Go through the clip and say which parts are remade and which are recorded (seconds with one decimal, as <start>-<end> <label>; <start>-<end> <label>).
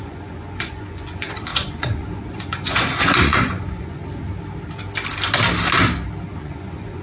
0.0-4.0 remade; 4.0-6.4 recorded; 6.4-7.0 remade